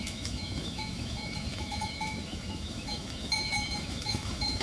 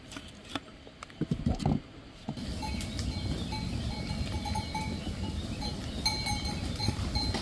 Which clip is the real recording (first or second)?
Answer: second